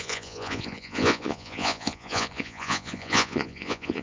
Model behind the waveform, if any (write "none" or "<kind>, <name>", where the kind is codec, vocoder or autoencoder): vocoder, Vocos